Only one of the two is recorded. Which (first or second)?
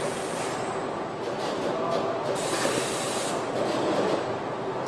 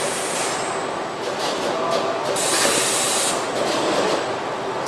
second